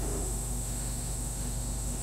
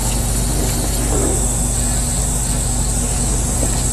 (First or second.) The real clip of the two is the second